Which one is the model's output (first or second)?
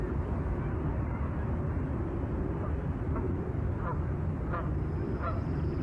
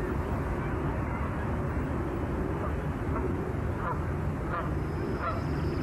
first